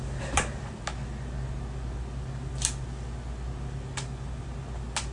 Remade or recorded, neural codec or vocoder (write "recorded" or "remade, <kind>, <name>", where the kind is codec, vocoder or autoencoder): recorded